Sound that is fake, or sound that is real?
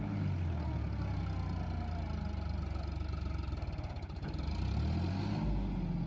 real